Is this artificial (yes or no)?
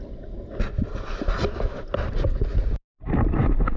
no